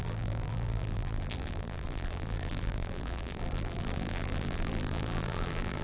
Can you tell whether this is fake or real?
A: fake